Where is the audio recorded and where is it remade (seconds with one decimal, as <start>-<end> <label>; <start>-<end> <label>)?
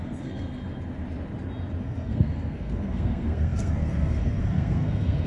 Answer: 0.0-0.6 remade; 0.6-1.8 recorded; 1.8-5.3 remade